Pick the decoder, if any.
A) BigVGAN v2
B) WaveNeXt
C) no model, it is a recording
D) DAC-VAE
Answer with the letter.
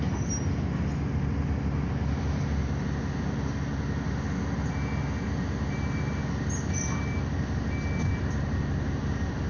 C